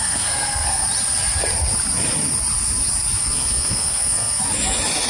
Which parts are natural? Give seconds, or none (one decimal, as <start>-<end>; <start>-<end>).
0.8-3.2; 4.4-5.1

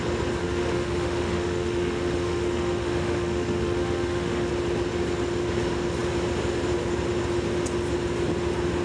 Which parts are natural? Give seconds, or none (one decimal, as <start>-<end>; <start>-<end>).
0.0-0.4; 4.5-8.8

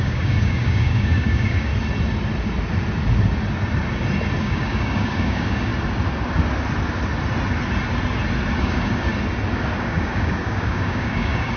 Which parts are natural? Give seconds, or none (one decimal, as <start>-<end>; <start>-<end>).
1.7-4.4; 5.7-8.6; 9.1-9.8

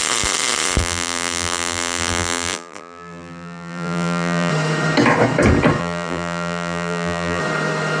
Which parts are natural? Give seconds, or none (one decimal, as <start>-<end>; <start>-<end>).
0.0-0.8; 4.5-5.8; 7.4-8.0

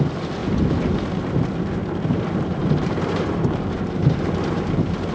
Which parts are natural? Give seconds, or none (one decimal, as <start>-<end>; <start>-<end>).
0.0-1.8

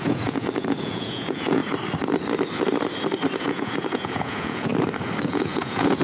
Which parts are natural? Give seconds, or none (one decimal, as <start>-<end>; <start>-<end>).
1.6-3.4; 4.7-5.2